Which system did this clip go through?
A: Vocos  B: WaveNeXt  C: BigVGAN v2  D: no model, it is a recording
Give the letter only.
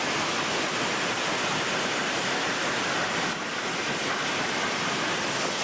D